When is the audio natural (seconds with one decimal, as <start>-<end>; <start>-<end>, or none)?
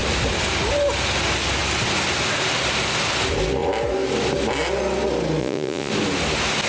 0.0-5.4; 5.9-6.7